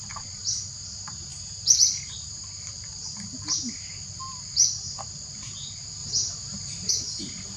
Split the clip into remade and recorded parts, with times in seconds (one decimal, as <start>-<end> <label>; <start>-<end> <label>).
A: 0.0-1.3 recorded; 1.3-3.7 remade; 3.7-7.6 recorded